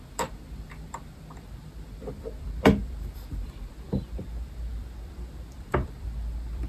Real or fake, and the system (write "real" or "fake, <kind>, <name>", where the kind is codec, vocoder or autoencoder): fake, vocoder, BigVGAN v2